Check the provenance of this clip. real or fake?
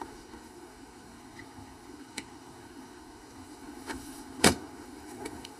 fake